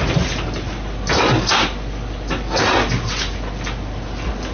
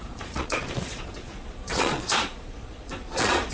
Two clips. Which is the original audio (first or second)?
first